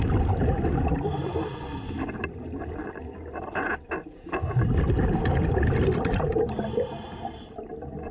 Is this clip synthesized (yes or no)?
no